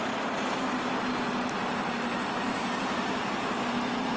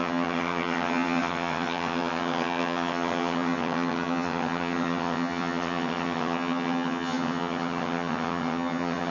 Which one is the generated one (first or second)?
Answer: second